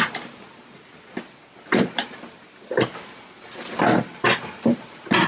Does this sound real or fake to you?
real